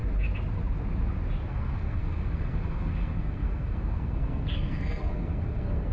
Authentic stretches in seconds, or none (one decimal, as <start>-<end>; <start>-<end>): 0.0-1.5